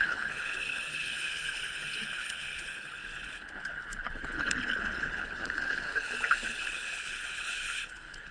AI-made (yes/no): yes